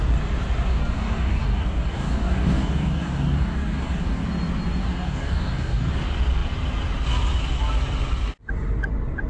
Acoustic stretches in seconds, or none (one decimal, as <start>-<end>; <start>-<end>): 0.0-0.7; 4.2-4.8; 5.9-9.3